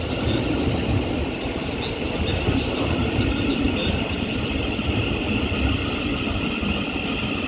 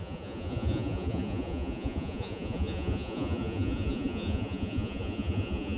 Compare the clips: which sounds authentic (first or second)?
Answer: first